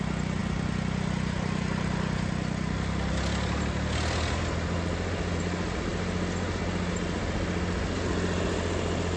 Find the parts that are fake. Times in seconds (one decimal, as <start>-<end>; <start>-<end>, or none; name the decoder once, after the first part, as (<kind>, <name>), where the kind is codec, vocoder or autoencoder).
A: none